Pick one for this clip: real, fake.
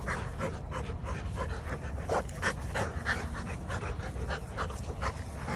real